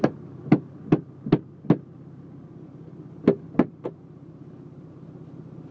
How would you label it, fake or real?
real